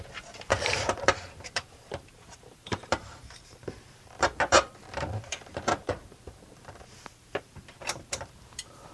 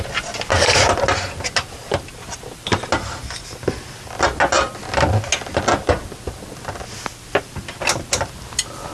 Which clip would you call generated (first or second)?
first